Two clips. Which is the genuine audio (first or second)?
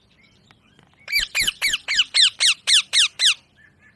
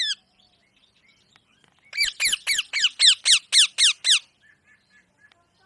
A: second